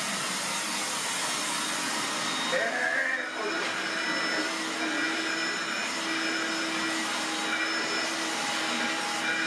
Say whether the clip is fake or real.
real